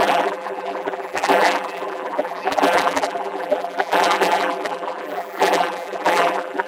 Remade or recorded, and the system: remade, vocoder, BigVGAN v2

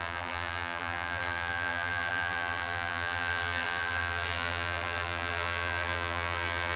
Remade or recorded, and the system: remade, vocoder, BigVGAN v2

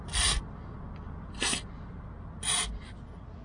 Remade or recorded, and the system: recorded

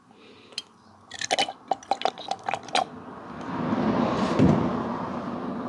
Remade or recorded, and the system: recorded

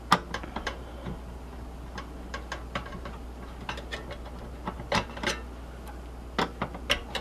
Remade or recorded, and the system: recorded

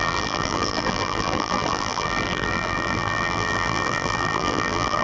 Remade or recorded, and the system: remade, vocoder, BigVGAN v2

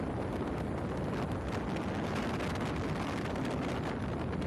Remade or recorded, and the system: recorded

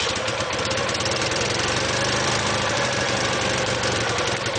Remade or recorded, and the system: remade, vocoder, BigVGAN v2